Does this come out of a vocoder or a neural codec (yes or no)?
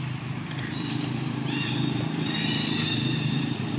yes